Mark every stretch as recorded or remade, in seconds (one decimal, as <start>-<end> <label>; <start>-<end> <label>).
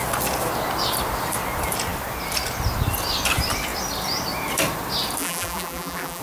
0.0-5.2 recorded; 5.2-6.2 remade